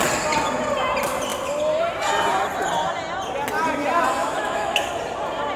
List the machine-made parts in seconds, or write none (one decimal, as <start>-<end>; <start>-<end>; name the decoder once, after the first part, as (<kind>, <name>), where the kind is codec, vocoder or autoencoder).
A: 4.2-4.9 (autoencoder, DAC-VAE)